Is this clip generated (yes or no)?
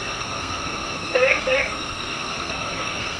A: yes